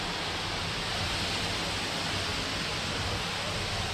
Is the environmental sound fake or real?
real